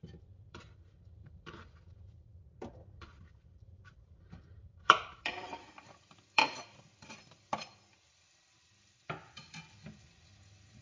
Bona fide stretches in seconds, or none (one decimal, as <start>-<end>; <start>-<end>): none